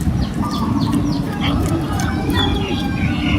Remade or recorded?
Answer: recorded